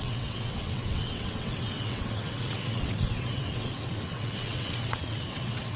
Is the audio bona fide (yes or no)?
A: no